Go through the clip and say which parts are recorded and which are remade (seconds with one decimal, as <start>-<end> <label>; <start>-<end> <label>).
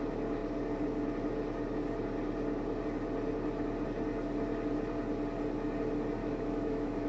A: 0.0-6.2 recorded; 6.2-7.1 remade